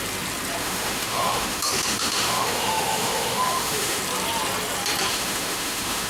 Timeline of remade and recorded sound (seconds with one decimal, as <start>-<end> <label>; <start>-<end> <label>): 0.0-0.6 recorded; 0.6-4.0 remade; 4.0-5.1 recorded; 5.1-6.1 remade